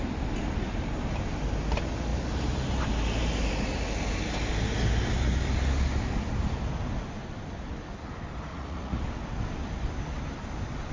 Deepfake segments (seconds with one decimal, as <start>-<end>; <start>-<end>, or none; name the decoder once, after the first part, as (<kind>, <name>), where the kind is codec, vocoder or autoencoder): 8.5-9.0 (vocoder, Vocos)